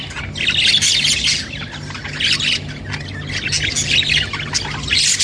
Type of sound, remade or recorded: recorded